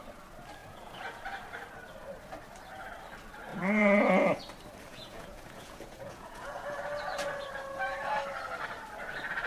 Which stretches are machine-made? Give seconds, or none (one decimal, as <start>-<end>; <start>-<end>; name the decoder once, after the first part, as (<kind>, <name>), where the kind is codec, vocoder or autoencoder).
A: 0.6-1.2 (vocoder, Vocos); 3.5-4.4; 4.9-6.8